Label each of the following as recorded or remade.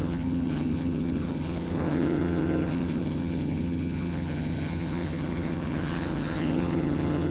remade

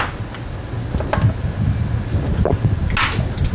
recorded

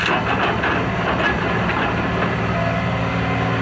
recorded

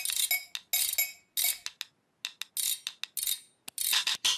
recorded